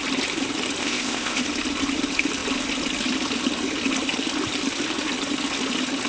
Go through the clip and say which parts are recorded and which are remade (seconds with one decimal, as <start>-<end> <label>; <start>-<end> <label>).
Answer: 0.0-0.8 recorded; 0.8-1.4 remade; 1.4-6.1 recorded